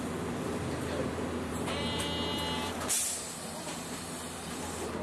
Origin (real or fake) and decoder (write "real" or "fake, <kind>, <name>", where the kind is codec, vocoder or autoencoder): fake, vocoder, BigVGAN v2